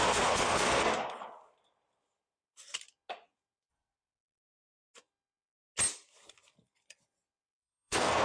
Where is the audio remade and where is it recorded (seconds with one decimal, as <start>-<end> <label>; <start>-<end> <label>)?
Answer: 0.0-0.9 remade; 0.9-3.7 recorded; 3.7-4.4 remade; 4.4-7.6 recorded; 7.6-8.2 remade